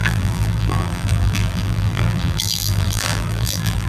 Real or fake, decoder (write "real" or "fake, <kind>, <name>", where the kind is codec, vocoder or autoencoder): fake, vocoder, BigVGAN v2